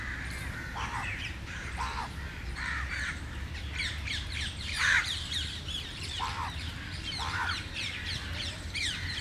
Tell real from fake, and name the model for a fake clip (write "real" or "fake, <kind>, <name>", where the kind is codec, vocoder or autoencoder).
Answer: fake, vocoder, BigVGAN v2